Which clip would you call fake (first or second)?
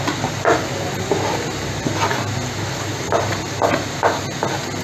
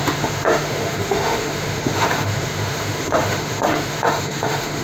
second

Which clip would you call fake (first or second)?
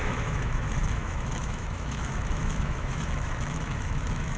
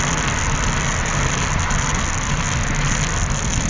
first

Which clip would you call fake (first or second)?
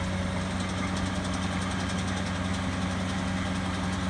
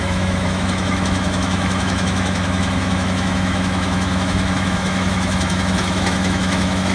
second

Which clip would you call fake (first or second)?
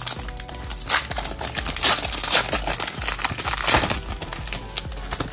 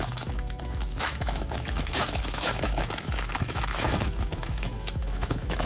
second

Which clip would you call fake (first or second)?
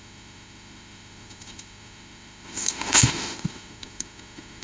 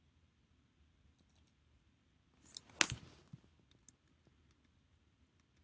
first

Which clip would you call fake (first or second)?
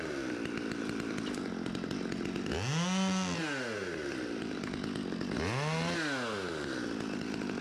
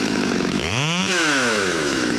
second